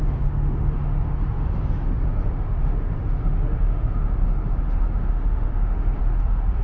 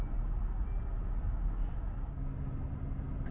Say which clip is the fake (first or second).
first